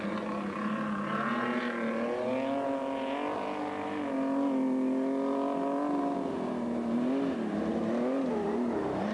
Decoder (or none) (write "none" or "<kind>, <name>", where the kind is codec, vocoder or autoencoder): none